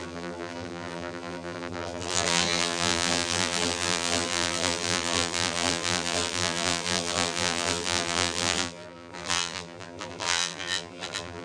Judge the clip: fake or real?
fake